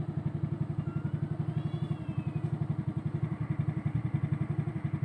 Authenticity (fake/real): real